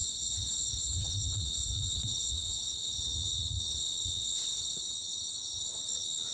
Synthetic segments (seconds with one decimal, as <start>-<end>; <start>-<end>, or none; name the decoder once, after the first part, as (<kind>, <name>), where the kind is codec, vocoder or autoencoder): 0.0-3.0 (vocoder, WaveNeXt); 3.7-4.8